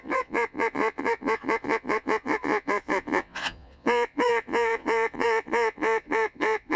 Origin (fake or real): fake